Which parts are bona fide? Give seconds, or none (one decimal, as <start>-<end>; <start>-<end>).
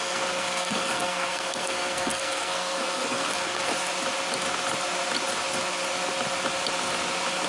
3.7-7.5